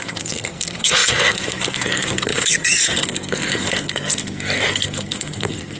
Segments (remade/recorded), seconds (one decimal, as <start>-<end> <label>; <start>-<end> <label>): 0.0-5.8 remade